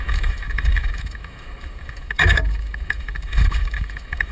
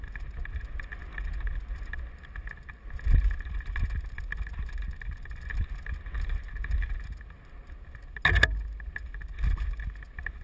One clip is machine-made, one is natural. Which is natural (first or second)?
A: second